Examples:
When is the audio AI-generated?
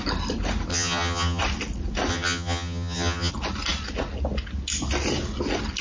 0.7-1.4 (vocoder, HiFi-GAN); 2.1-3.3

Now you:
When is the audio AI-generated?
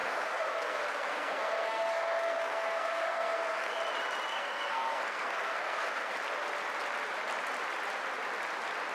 0.0-3.8 (codec, SNAC); 4.3-6.1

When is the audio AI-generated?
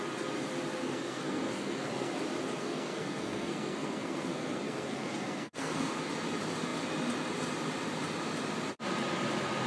0.8-2.2 (codec, SNAC); 2.6-6.1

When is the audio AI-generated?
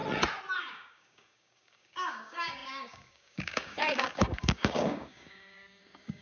0.6-6.2 (codec, DAC)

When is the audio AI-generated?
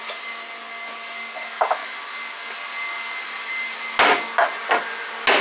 none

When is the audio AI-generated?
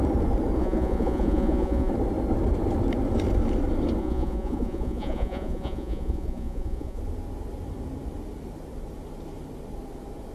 0.6-1.9 (vocoder, Vocos); 4.0-7.0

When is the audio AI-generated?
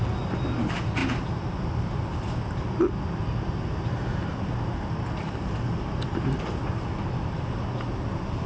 none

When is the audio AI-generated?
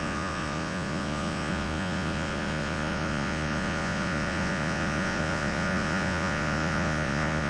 0.0-7.5 (vocoder, Vocos)